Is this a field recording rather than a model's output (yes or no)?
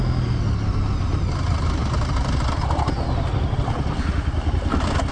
yes